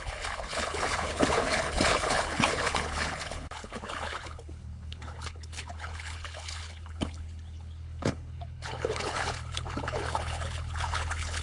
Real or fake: fake